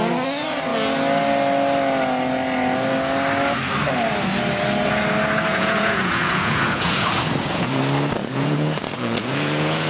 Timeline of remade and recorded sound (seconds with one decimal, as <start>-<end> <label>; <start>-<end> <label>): 0.0-5.5 recorded; 5.5-7.8 remade; 7.8-8.2 recorded; 8.2-9.9 remade